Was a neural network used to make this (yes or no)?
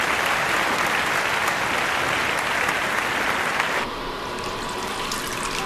no